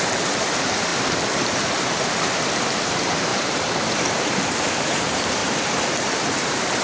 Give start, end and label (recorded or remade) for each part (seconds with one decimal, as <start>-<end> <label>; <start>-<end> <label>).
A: 0.0-6.8 remade